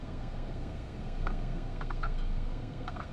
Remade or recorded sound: remade